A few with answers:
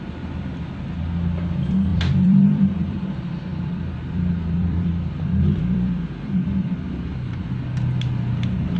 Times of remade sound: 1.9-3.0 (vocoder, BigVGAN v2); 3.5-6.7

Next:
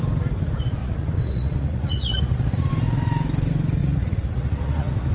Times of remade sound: 0.8-2.7 (vocoder, Vocos); 3.8-5.1

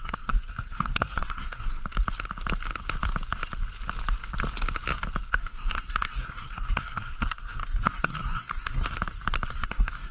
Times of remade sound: 0.0-1.8 (codec, SNAC); 5.3-8.8; 9.5-10.1